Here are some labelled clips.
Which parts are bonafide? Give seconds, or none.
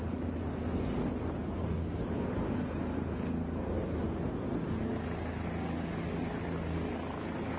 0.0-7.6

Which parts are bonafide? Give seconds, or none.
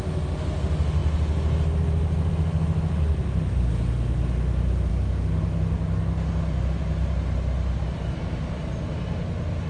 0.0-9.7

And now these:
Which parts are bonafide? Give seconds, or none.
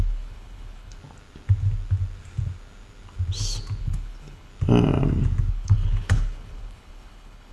1.0-3.8; 4.5-5.5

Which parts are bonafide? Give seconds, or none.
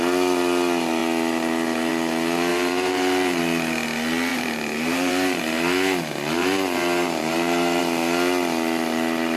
0.0-2.5; 3.4-4.3; 5.4-6.4; 7.8-9.4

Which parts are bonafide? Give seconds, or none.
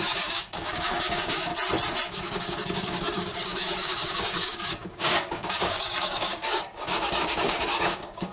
1.5-2.1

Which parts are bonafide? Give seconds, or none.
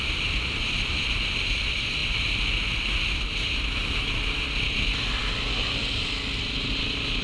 0.0-7.2